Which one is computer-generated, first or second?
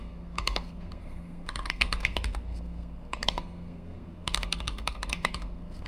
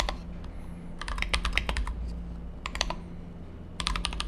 first